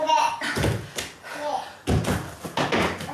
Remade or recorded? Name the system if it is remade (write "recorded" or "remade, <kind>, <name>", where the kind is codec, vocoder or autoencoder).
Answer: recorded